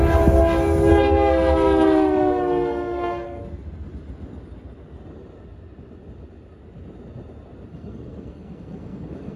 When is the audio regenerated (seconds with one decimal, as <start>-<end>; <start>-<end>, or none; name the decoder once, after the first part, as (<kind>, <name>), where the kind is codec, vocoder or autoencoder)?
0.9-3.4 (codec, SNAC); 7.7-9.4